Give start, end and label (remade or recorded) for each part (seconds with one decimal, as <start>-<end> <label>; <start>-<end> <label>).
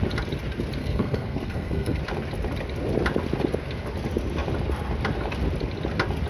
0.0-0.8 recorded; 0.8-2.0 remade; 2.0-6.3 recorded